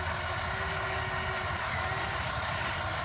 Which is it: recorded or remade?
recorded